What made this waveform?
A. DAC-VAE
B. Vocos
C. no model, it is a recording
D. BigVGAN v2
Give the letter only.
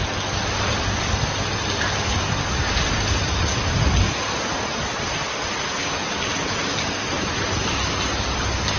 C